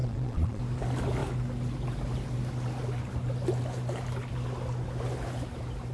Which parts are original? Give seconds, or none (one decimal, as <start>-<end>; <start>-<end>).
0.6-5.9